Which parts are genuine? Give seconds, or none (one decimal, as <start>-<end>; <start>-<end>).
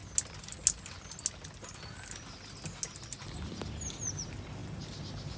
0.0-5.4